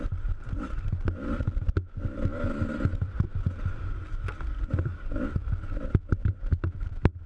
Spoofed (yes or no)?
no